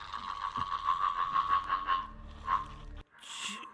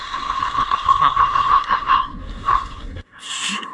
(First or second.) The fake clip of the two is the second